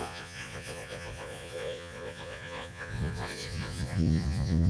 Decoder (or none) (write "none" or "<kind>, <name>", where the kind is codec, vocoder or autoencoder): vocoder, Vocos